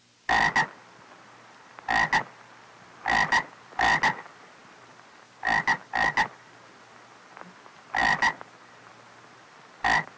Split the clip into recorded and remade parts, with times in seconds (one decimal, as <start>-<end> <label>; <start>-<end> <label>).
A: 0.0-10.2 recorded